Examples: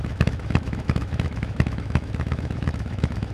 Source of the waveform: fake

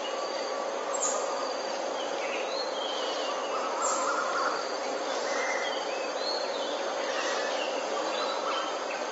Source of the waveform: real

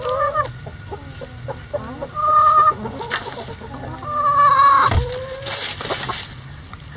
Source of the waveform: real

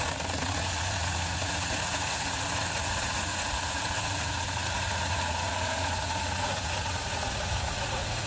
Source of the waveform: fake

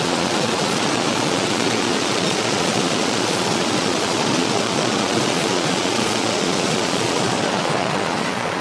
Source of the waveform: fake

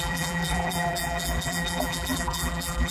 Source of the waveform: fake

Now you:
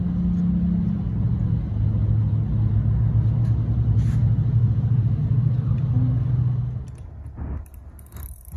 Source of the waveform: real